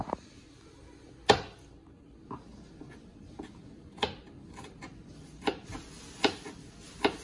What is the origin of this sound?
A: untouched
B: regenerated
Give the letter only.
A